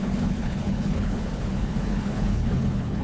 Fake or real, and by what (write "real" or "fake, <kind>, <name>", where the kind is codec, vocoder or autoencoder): fake, codec, HILCodec